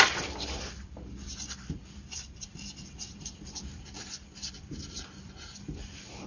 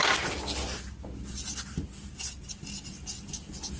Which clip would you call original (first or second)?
second